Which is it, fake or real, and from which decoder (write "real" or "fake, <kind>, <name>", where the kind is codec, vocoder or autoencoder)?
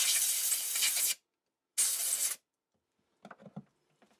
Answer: real